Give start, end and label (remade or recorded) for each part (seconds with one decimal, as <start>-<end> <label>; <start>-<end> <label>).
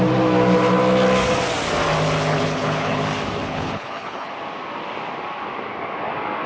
0.0-2.3 recorded; 2.3-3.0 remade; 3.0-3.4 recorded; 3.4-4.3 remade; 4.3-6.5 recorded